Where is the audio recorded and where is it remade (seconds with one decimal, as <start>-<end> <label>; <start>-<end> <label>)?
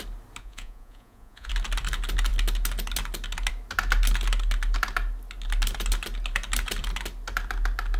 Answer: 0.0-0.4 recorded; 0.4-1.5 remade; 1.5-8.0 recorded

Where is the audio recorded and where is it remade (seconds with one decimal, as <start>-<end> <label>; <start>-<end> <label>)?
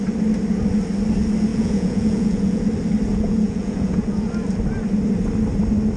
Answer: 0.0-1.5 recorded; 1.5-2.6 remade; 2.6-3.1 recorded; 3.1-4.3 remade; 4.3-6.0 recorded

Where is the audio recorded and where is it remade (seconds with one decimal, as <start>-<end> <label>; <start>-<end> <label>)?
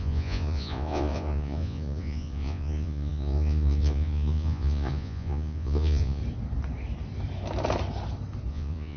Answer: 0.0-6.2 remade; 6.2-8.5 recorded; 8.5-9.0 remade